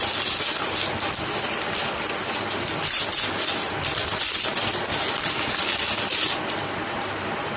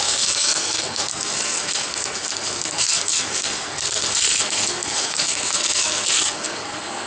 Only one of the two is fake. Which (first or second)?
second